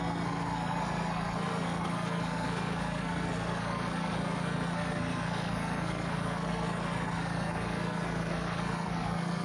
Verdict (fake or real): fake